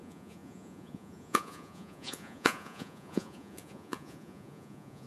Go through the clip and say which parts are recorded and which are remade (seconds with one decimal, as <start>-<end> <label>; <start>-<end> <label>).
0.0-5.1 remade